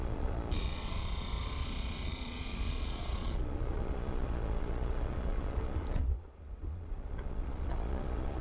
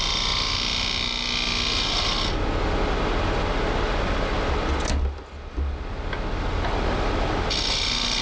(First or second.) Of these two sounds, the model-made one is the first